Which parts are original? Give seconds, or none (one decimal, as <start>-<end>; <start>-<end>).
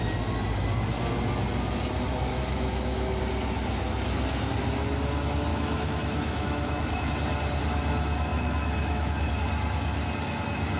0.0-2.3; 3.2-5.5; 7.1-8.3; 9.3-10.8